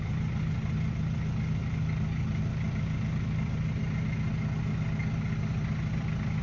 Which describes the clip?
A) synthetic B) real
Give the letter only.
B